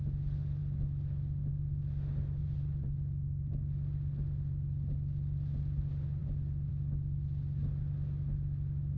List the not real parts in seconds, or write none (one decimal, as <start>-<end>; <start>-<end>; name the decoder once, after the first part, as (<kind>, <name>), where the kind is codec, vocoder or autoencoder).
2.4-2.9 (vocoder, BigVGAN v2)